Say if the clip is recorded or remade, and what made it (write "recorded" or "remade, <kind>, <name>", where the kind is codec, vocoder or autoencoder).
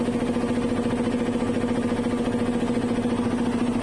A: recorded